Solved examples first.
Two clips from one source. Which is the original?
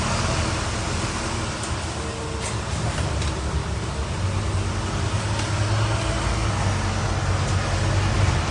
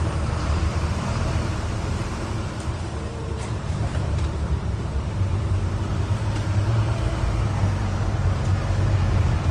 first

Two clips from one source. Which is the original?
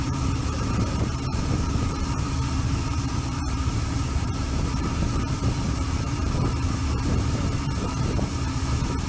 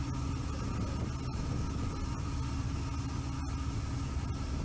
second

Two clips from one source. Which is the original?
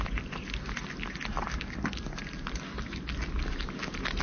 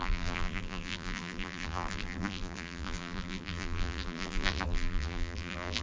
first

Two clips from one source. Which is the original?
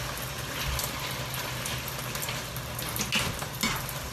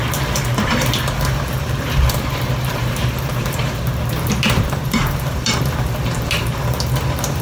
first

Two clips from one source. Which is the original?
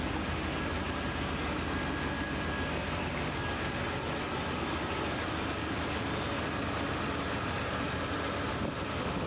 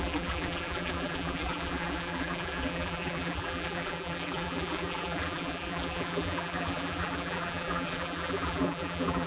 first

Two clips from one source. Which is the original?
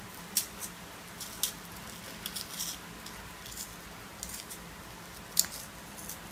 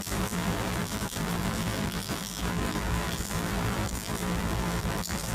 first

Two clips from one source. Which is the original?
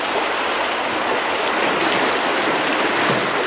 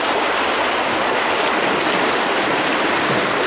first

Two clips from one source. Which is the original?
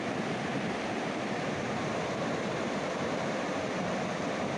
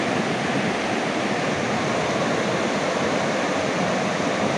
second